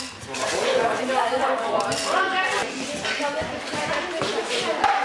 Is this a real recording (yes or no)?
yes